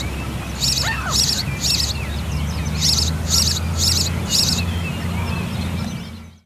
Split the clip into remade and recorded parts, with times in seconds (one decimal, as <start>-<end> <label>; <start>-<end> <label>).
0.0-6.5 recorded